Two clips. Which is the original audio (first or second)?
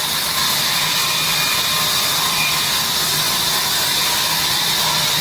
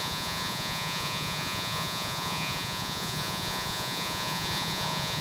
first